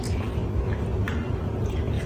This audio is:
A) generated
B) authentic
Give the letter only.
B